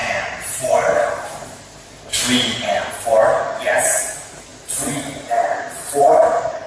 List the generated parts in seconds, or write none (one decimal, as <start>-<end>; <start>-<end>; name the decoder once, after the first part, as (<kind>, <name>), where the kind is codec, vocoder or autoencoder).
0.0-2.9 (vocoder, BigVGAN v2)